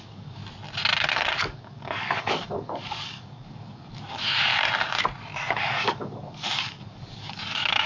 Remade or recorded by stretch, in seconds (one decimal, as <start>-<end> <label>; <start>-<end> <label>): 0.0-0.4 remade; 0.4-1.1 recorded; 1.1-4.5 remade; 4.5-5.5 recorded; 5.5-7.9 remade